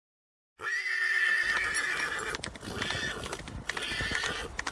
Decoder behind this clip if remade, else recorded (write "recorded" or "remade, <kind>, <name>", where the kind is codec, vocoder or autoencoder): recorded